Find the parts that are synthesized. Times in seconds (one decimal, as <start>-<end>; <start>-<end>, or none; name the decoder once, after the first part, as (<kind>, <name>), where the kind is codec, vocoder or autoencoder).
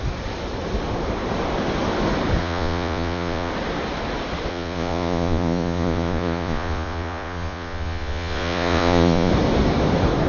2.4-3.5 (vocoder, Vocos); 4.5-9.3